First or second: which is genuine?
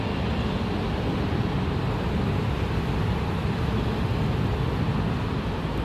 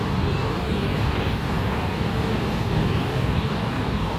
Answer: first